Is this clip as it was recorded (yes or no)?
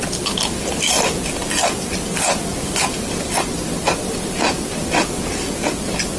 yes